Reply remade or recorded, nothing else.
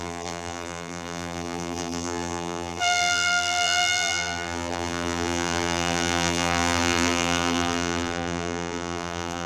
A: remade